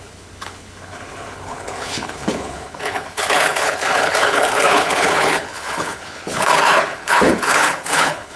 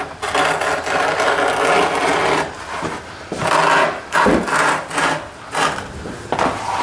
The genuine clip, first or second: second